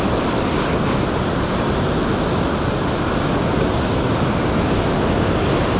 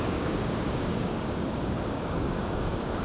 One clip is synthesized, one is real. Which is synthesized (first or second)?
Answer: second